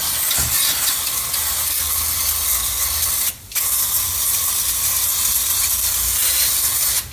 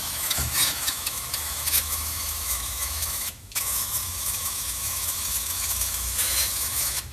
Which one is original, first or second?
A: first